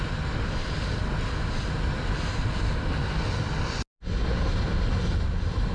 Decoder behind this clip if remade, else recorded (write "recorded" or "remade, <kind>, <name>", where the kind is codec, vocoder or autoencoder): recorded